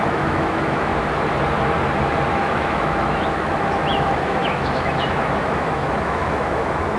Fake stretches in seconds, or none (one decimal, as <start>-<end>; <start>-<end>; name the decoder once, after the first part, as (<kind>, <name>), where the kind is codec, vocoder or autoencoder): 0.0-0.9 (autoencoder, DAC-VAE); 2.3-7.0